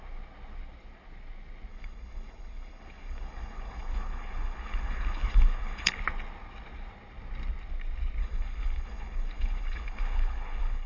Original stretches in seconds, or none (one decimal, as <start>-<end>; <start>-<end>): 0.0-1.7; 6.0-8.2